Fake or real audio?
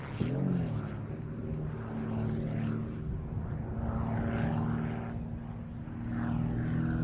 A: real